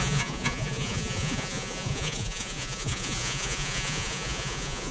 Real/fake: fake